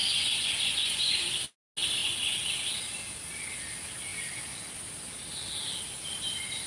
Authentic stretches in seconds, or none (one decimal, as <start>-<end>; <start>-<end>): 1.3-6.7

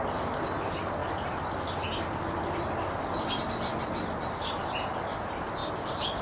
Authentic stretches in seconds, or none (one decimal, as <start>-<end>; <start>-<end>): 0.0-5.6

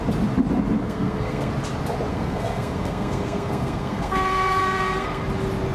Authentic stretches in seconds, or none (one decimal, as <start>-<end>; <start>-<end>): 0.0-0.8; 1.5-2.1; 5.2-5.7

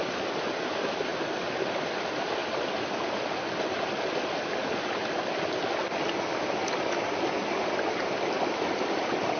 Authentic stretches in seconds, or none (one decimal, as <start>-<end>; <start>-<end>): 0.0-9.4

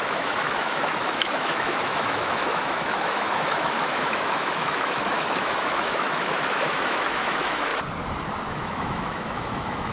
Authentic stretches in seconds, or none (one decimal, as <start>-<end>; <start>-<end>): 7.7-8.5

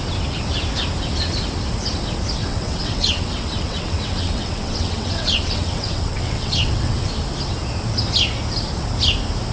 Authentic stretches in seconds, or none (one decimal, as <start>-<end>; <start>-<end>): 0.0-2.4; 7.1-9.5

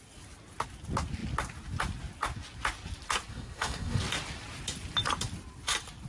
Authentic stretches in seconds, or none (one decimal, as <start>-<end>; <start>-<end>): 0.0-3.3; 4.0-6.1

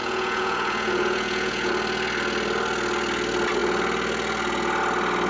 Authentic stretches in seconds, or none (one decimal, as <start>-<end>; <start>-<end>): 1.7-5.3